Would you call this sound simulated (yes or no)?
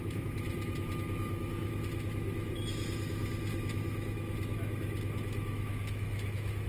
yes